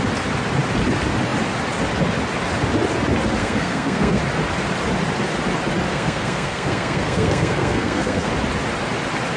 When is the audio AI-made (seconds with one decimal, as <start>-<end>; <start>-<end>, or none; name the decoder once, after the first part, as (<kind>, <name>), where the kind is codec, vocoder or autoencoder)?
3.4-4.2 (codec, SNAC); 5.9-8.3